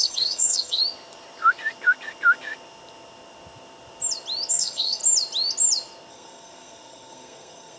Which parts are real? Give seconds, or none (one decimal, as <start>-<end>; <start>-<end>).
0.8-4.5; 5.0-6.1